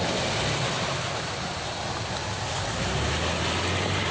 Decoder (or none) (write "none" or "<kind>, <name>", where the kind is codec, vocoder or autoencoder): none